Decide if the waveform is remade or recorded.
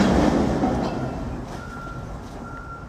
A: recorded